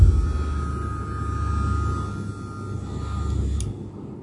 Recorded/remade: recorded